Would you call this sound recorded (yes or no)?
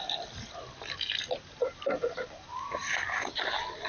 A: yes